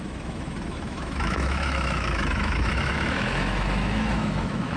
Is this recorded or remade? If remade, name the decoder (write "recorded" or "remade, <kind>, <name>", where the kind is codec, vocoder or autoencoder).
remade, autoencoder, DAC-VAE